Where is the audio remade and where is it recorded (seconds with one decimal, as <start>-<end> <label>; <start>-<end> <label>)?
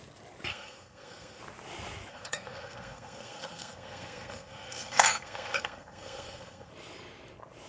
0.0-0.5 recorded; 0.5-1.4 remade; 1.4-2.1 recorded; 2.1-6.7 remade; 6.7-7.7 recorded